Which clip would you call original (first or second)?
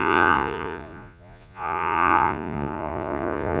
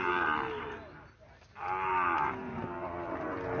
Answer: second